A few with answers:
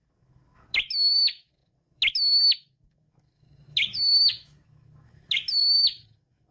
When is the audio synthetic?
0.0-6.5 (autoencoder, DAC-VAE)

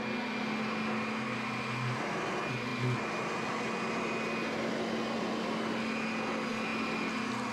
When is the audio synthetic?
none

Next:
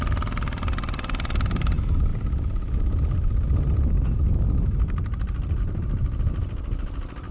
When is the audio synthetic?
none